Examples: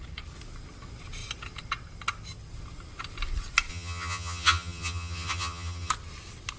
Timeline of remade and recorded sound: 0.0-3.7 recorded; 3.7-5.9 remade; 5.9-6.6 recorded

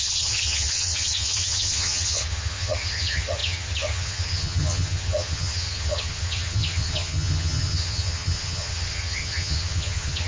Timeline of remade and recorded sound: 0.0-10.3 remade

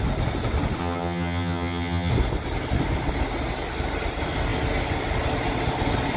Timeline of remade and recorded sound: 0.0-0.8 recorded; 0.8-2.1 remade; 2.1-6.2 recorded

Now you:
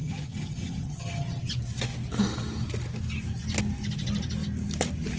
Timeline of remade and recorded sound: 0.0-1.5 remade; 1.5-5.2 recorded

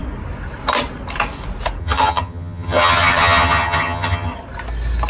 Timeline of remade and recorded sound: 0.0-1.8 recorded; 1.8-4.3 remade; 4.3-5.1 recorded

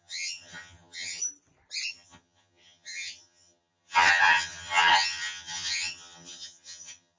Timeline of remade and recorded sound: 0.0-1.2 remade; 1.2-1.9 recorded; 1.9-7.2 remade

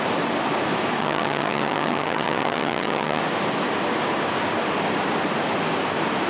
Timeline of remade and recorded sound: 0.0-1.0 recorded; 1.0-3.2 remade; 3.2-6.3 recorded